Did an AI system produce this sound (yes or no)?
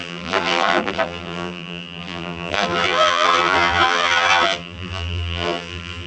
yes